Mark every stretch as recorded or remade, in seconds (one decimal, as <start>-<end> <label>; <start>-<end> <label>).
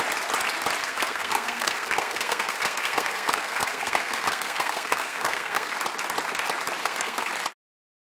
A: 0.0-0.8 recorded; 0.8-5.7 remade; 5.7-6.8 recorded; 6.8-7.3 remade; 7.3-8.1 recorded